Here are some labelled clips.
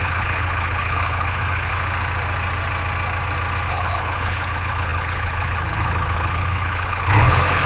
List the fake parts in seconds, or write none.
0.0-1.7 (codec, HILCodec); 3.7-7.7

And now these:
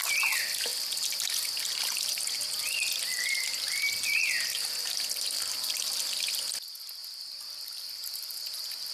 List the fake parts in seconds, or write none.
3.1-6.0 (vocoder, BigVGAN v2); 7.0-7.7

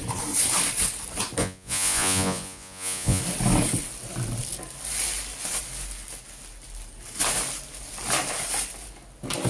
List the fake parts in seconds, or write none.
1.4-3.2 (vocoder, Vocos)

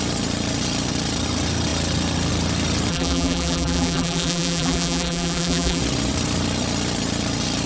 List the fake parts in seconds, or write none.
2.9-5.8 (vocoder, BigVGAN v2)

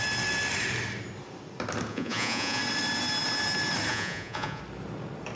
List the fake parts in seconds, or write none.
1.9-2.6 (vocoder, Vocos); 3.9-4.6